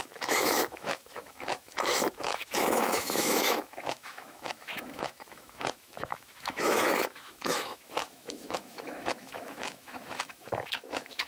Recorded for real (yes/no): no